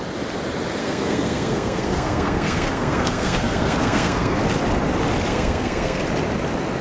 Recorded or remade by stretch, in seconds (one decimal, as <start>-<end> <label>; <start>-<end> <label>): 0.0-0.8 recorded; 0.8-4.4 remade; 4.4-5.3 recorded; 5.3-6.0 remade; 6.0-6.8 recorded